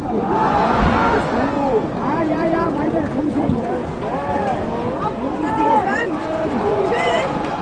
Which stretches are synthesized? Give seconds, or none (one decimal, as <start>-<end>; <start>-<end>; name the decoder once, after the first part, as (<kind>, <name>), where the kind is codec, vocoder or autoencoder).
0.0-3.8 (vocoder, Vocos); 5.5-7.6